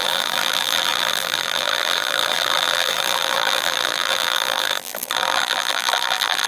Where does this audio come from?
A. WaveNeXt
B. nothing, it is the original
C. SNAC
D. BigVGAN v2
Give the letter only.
D